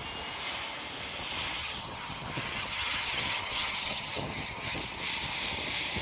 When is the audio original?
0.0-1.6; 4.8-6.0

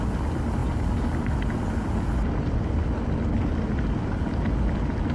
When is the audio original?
0.0-5.1